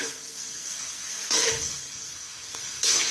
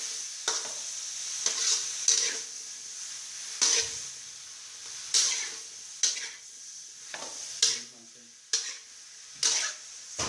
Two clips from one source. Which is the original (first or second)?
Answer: second